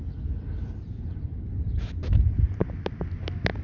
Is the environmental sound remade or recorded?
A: recorded